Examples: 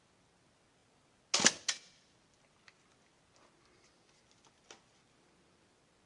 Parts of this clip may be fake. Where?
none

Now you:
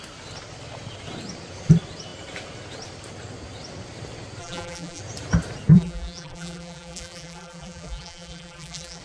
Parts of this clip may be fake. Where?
4.4-5.0 (vocoder, BigVGAN v2); 5.7-9.0

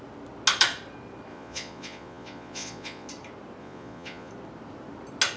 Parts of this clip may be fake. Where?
1.3-3.1 (vocoder, Vocos); 3.6-4.3